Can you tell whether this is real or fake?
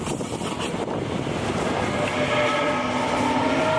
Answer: real